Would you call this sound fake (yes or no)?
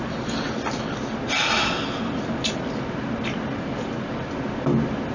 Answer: no